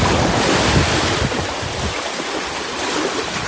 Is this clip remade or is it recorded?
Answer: recorded